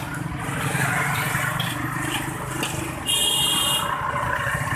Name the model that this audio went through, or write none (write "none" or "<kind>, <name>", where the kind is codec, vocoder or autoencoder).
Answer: none